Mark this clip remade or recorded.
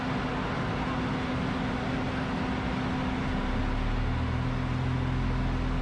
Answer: recorded